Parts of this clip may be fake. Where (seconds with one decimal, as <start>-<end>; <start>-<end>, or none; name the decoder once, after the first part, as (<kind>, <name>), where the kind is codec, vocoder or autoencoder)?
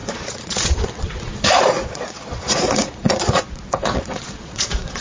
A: 0.0-5.0 (vocoder, Vocos)